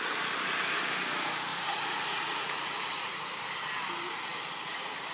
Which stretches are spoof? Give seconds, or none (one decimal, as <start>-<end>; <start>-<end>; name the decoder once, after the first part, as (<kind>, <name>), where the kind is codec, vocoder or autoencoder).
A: 1.5-3.2 (vocoder, Vocos)

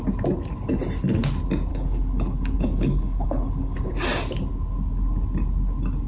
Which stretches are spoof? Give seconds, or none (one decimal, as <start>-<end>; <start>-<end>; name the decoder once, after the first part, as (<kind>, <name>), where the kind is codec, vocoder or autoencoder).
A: 1.7-3.9 (codec, HILCodec)

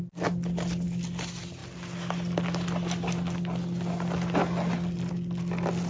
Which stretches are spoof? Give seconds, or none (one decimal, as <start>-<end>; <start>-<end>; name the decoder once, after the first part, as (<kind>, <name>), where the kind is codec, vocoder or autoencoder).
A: none

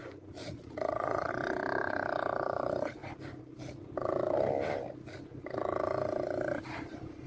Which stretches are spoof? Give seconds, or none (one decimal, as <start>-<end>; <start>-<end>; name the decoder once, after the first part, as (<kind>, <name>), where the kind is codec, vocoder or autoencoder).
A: 0.4-1.3 (vocoder, Vocos)

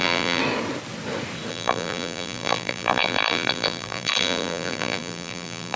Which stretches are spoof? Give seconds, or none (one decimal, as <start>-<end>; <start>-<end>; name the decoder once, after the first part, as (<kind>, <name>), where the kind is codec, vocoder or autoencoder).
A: 0.0-0.4 (vocoder, BigVGAN v2); 1.5-5.8

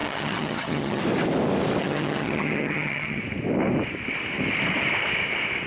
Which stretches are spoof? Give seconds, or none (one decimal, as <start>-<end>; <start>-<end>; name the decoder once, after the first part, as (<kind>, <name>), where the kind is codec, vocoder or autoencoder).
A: 0.0-1.0 (vocoder, HiFi-GAN); 1.8-3.2

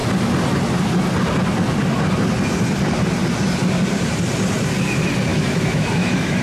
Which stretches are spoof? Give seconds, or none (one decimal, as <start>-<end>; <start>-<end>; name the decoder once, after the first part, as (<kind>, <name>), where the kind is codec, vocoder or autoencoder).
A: 5.3-6.4 (autoencoder, DAC-VAE)

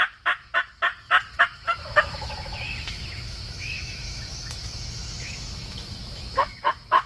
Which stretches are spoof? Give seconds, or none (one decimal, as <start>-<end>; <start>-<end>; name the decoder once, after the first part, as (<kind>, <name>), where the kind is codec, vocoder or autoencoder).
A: 0.0-0.9 (autoencoder, DAC-VAE); 1.4-7.1